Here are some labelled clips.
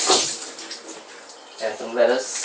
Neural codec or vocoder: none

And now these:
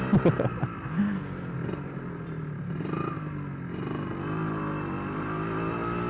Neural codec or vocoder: none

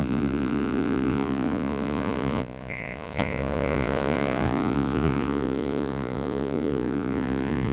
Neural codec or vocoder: vocoder, Vocos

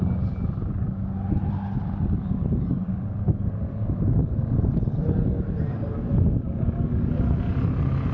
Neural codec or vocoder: none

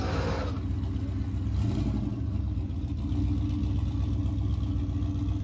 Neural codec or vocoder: none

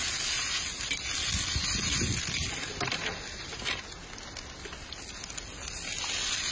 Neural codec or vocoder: none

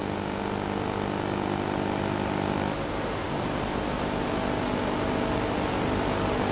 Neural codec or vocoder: none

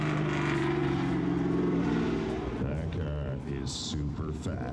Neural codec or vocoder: vocoder, BigVGAN v2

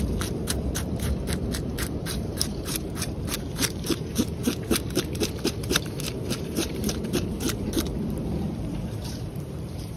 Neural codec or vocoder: vocoder, BigVGAN v2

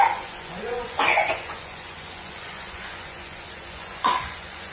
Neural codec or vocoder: vocoder, Vocos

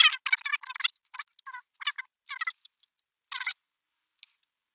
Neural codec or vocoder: none